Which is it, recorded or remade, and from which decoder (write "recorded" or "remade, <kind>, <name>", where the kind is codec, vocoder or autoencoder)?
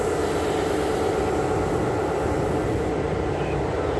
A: recorded